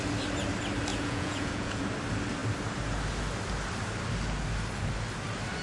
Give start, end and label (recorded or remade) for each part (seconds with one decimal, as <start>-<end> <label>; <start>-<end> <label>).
0.0-0.9 recorded; 0.9-1.8 remade; 1.8-5.6 recorded